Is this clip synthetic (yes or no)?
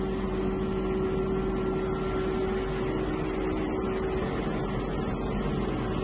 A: no